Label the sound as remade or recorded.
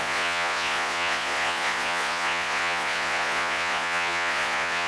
remade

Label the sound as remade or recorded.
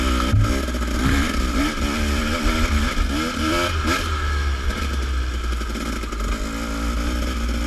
recorded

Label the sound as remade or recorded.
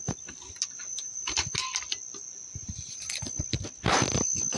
recorded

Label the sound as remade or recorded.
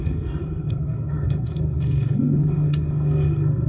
remade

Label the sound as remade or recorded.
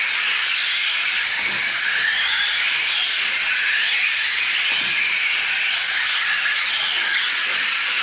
recorded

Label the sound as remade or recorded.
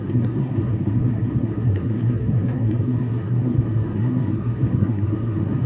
remade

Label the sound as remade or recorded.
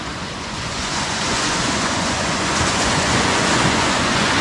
remade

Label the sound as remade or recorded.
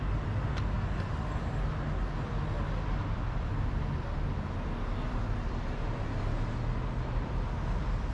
recorded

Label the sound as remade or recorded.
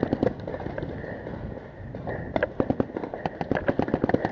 recorded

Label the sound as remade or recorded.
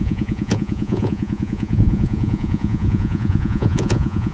remade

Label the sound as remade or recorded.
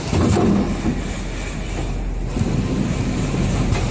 recorded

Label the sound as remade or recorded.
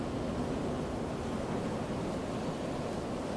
recorded